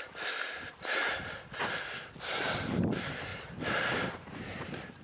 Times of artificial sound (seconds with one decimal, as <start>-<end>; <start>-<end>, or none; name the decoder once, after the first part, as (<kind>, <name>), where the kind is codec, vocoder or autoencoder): 3.3-5.0 (vocoder, BigVGAN v2)